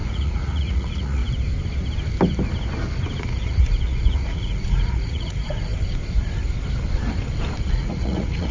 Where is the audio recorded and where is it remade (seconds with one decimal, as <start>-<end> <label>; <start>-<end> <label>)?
0.0-1.2 remade; 1.2-3.2 recorded; 3.2-5.7 remade; 5.7-7.7 recorded; 7.7-8.5 remade